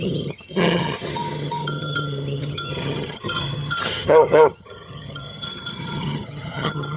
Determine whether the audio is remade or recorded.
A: remade